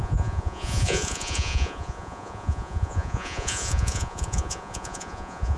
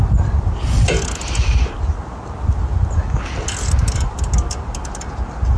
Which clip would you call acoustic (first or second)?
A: second